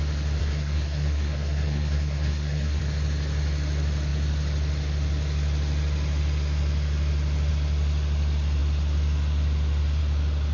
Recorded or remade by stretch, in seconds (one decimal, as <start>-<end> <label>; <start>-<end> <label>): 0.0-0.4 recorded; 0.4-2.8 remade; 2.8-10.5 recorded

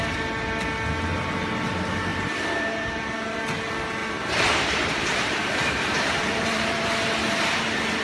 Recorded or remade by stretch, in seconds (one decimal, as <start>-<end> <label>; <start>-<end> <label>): 0.0-2.1 recorded; 2.1-3.4 remade; 3.4-4.0 recorded; 4.0-7.6 remade; 7.6-8.0 recorded

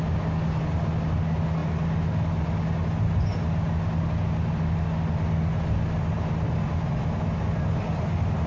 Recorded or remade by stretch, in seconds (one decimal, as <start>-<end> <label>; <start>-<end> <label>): 0.0-8.5 recorded

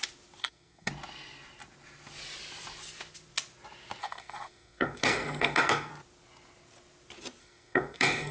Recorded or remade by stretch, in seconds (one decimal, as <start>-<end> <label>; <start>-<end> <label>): 0.0-0.4 recorded; 0.4-0.9 remade; 0.9-4.0 recorded; 4.0-5.9 remade; 5.9-7.4 recorded; 7.4-8.3 remade